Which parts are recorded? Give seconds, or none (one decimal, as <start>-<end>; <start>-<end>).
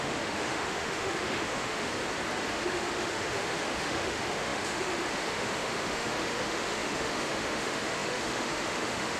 1.9-2.5